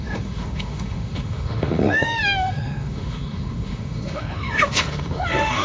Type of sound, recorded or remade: remade